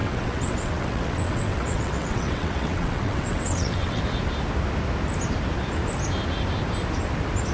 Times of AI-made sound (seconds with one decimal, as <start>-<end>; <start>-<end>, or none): 0.0-4.0